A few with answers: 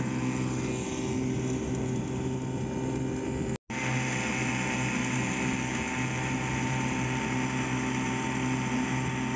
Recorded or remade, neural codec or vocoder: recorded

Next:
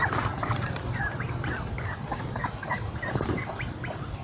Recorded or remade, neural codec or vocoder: recorded